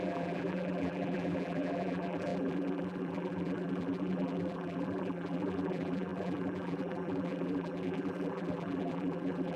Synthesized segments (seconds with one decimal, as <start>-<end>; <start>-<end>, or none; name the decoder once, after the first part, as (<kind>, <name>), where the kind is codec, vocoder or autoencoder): 0.0-9.6 (vocoder, BigVGAN v2)